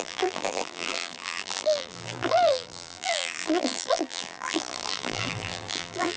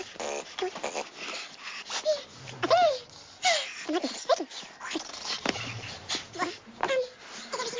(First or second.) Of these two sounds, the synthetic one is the first